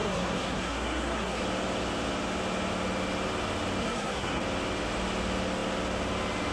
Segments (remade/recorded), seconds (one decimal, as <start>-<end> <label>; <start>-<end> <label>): 0.0-1.4 remade; 1.4-3.8 recorded; 3.8-4.4 remade; 4.4-6.5 recorded